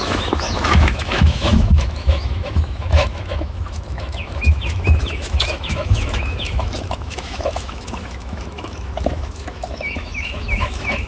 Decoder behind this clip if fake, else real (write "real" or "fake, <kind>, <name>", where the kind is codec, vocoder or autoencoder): fake, autoencoder, DAC-VAE